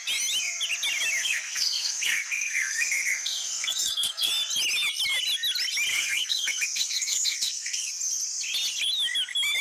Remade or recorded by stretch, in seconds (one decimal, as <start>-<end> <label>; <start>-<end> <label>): 0.0-1.2 recorded; 1.2-4.3 remade; 4.3-5.9 recorded; 5.9-7.9 remade; 7.9-9.6 recorded